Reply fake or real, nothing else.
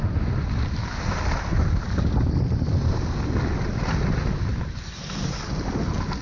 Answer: real